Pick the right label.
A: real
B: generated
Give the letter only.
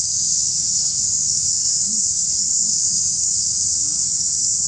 B